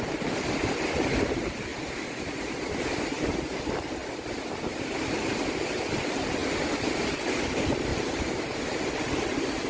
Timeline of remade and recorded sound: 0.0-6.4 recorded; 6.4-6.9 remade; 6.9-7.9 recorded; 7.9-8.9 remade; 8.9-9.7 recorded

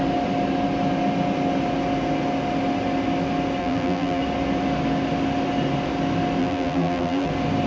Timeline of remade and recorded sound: 0.0-3.6 recorded; 3.6-4.2 remade; 4.2-6.4 recorded; 6.4-7.3 remade; 7.3-7.7 recorded

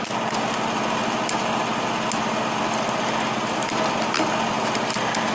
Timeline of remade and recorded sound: 0.0-3.6 recorded; 3.6-4.7 remade; 4.7-5.3 recorded

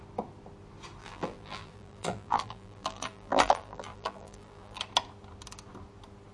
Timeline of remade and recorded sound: 0.0-1.0 recorded; 1.0-4.8 remade; 4.8-6.3 recorded

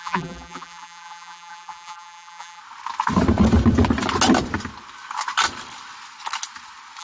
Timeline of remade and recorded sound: 0.0-2.6 remade; 2.6-7.0 recorded

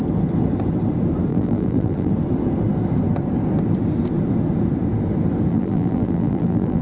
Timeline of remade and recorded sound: 0.0-1.3 recorded; 1.3-2.1 remade; 2.1-5.5 recorded; 5.5-6.8 remade